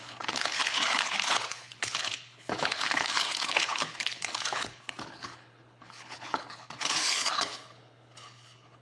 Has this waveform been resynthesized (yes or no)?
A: yes